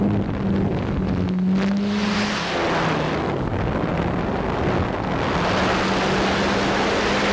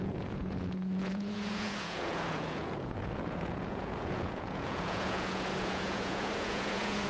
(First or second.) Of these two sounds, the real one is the first